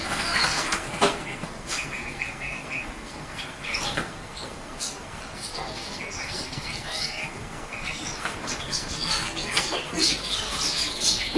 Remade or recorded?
remade